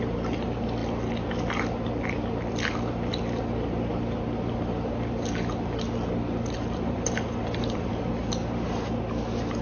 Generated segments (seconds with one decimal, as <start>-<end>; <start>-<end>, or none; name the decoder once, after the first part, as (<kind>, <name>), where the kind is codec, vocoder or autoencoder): 6.6-8.1 (vocoder, BigVGAN v2)